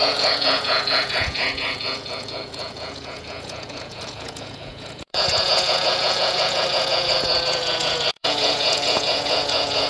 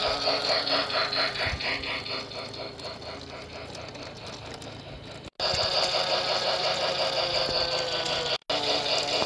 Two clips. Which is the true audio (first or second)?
second